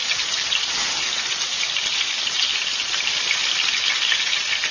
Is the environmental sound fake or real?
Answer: real